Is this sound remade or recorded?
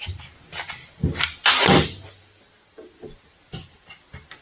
recorded